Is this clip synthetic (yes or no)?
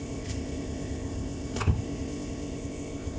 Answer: yes